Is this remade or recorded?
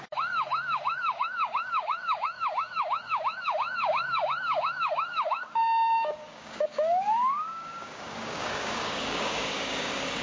remade